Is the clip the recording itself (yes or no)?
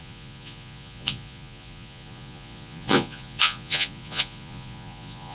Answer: no